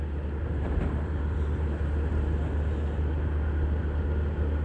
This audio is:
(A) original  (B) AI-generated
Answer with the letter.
A